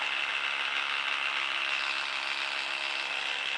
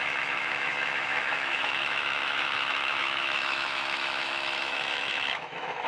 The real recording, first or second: first